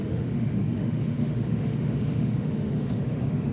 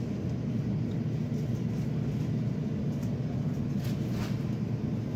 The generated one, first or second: first